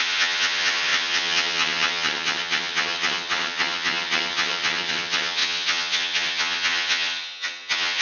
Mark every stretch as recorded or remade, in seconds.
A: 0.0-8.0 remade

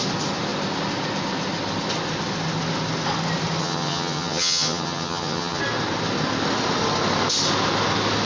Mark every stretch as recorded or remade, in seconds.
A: 0.0-3.6 recorded; 3.6-5.6 remade; 5.6-8.3 recorded

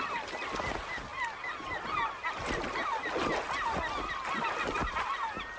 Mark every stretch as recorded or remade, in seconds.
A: 0.0-5.6 recorded

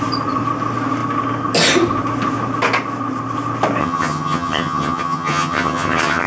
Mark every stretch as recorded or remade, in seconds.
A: 0.0-3.8 recorded; 3.8-6.3 remade